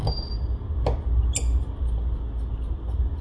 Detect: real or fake real